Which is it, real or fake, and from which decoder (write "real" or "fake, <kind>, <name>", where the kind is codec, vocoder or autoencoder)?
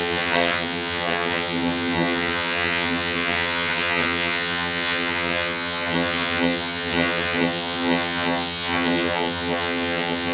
fake, vocoder, HiFi-GAN